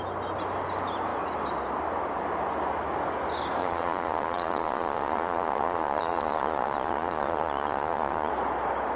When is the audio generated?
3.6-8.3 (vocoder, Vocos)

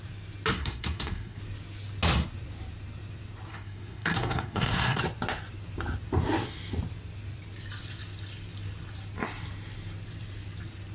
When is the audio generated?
0.5-1.4 (codec, SNAC); 3.5-5.0

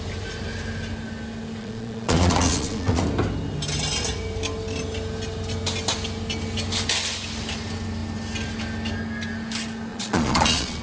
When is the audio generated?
1.6-3.0 (vocoder, Vocos); 9.9-10.8

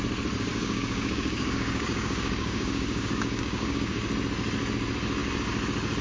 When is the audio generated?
0.5-4.1 (codec, DAC)

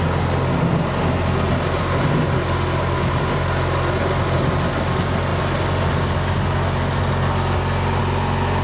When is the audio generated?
none

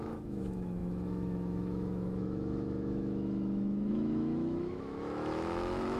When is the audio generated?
0.0-6.0 (autoencoder, DAC-VAE)